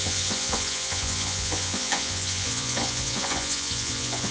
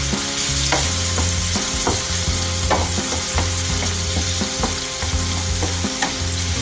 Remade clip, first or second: first